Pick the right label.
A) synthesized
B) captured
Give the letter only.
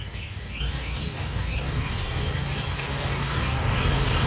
A